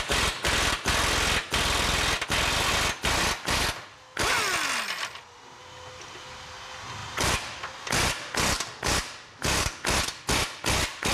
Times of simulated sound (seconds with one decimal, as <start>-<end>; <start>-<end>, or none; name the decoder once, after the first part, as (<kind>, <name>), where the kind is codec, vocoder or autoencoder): none